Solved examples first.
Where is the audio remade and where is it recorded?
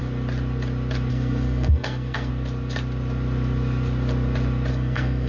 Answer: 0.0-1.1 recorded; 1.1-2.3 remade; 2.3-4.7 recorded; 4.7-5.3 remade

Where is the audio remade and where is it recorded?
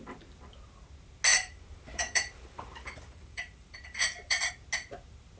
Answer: 0.0-1.3 recorded; 1.3-4.5 remade; 4.5-5.4 recorded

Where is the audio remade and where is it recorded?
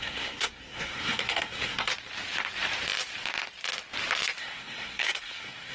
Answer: 0.0-1.9 remade; 1.9-4.4 recorded; 4.4-5.7 remade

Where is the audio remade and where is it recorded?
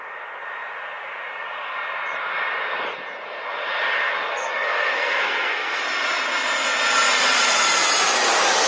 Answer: 0.0-4.3 recorded; 4.3-5.8 remade; 5.8-8.7 recorded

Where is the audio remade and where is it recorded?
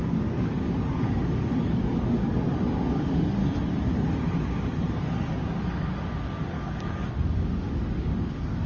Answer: 0.0-3.4 remade; 3.4-5.3 recorded; 5.3-8.7 remade